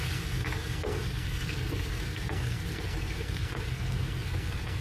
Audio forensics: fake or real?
fake